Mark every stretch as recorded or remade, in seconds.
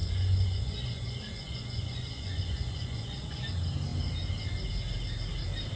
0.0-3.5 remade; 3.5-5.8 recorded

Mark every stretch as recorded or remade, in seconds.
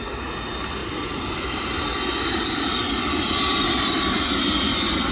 0.0-5.1 recorded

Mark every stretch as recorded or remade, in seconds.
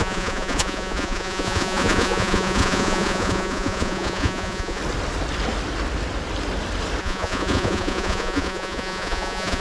0.0-4.8 remade; 4.8-7.0 recorded; 7.0-9.6 remade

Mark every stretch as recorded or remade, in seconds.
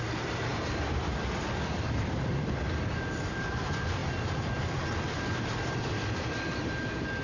0.0-0.5 remade; 0.5-1.4 recorded; 1.4-4.0 remade; 4.0-5.1 recorded; 5.1-7.2 remade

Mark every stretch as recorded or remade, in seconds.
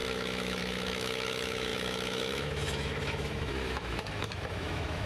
0.0-5.1 remade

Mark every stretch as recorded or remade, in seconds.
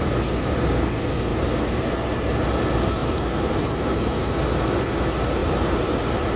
0.0-1.3 recorded; 1.3-2.6 remade; 2.6-3.0 recorded; 3.0-4.3 remade; 4.3-5.4 recorded; 5.4-6.4 remade